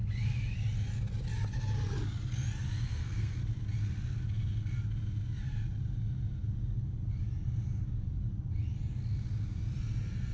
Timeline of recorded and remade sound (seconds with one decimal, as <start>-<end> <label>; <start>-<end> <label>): 0.0-2.9 recorded; 2.9-3.4 remade; 3.4-10.3 recorded